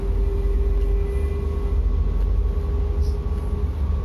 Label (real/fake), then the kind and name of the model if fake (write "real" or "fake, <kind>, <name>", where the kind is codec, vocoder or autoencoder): real